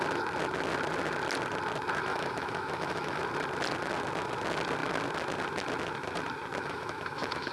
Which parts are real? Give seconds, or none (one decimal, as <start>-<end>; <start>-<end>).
0.0-2.1; 3.2-6.6

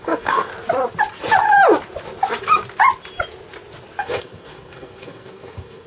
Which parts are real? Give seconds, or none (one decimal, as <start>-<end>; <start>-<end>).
0.5-4.0